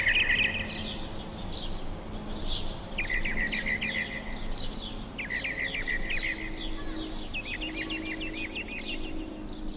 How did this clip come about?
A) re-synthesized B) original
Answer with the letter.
B